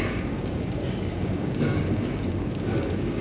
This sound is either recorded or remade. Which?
remade